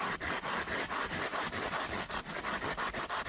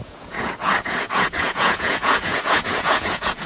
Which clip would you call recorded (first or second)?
first